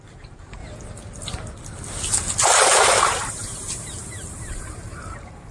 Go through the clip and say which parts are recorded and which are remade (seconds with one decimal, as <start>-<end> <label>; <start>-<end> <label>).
0.0-0.6 remade; 0.6-2.4 recorded; 2.4-5.5 remade